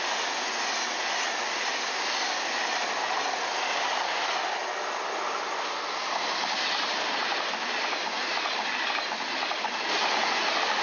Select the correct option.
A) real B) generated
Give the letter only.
A